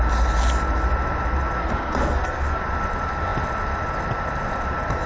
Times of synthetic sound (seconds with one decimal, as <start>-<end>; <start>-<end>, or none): 1.6-2.6